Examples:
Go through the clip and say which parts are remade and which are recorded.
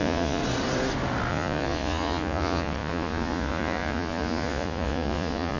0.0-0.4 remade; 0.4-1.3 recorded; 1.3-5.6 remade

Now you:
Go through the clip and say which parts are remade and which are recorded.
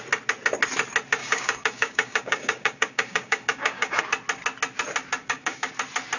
0.0-1.2 recorded; 1.2-4.0 remade; 4.0-5.2 recorded; 5.2-5.7 remade; 5.7-6.2 recorded